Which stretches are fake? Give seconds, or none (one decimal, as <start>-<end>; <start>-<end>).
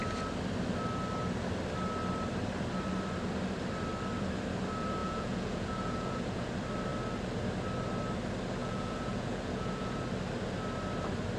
5.0-6.5; 8.6-10.0